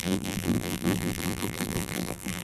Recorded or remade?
remade